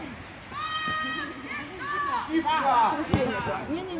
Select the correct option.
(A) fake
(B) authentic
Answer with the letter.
B